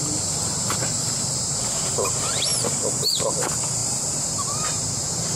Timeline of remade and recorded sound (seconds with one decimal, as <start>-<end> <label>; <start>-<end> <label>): 0.0-0.8 remade; 0.8-1.3 recorded; 1.3-2.5 remade; 2.5-3.2 recorded; 3.2-5.4 remade